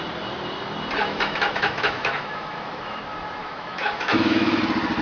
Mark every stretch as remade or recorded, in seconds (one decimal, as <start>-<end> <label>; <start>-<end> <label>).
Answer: 0.0-1.0 recorded; 1.0-3.0 remade; 3.0-3.4 recorded; 3.4-4.6 remade; 4.6-5.0 recorded